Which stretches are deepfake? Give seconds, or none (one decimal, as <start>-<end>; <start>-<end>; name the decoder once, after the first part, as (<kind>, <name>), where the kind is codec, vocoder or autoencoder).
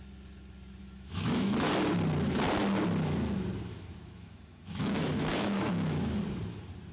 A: 0.8-1.7 (autoencoder, DAC-VAE); 3.7-6.2